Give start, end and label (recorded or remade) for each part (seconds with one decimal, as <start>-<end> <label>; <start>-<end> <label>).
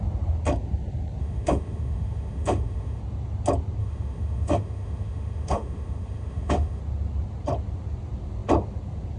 0.0-1.2 recorded; 1.2-3.0 remade; 3.0-3.8 recorded; 3.8-6.8 remade; 6.8-9.2 recorded